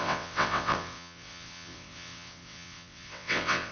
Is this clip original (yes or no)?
no